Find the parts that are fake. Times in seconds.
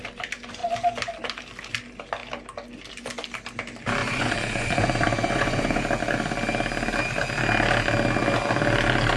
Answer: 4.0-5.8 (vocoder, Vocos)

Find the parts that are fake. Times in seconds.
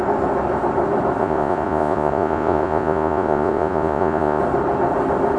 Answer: 1.2-4.4 (vocoder, Vocos)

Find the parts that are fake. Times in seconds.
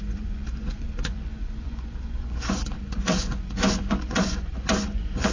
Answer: 0.0-5.3 (vocoder, Vocos)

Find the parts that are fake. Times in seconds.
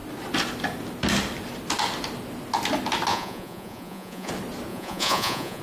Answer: 3.1-4.3 (vocoder, Vocos); 4.7-5.6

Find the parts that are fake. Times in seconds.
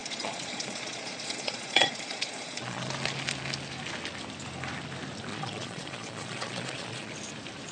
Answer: 0.0-2.9 (vocoder, Vocos); 5.3-7.1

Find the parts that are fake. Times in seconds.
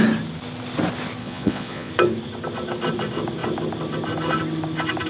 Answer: 1.2-1.9 (vocoder, Vocos)